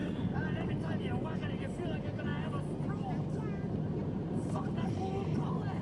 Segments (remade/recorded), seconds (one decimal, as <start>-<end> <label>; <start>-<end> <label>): 0.0-5.8 recorded